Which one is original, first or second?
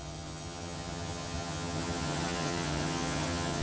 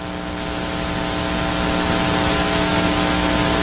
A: second